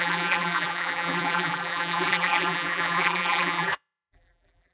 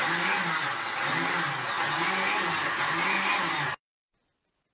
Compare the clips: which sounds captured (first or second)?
second